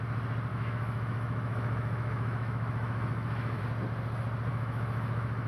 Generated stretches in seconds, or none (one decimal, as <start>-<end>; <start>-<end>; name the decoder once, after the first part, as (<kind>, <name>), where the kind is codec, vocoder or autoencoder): 0.5-3.6 (autoencoder, DAC-VAE); 4.5-5.5